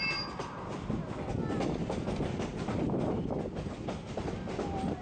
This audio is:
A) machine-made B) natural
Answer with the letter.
B